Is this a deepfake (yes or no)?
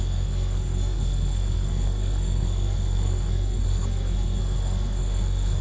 yes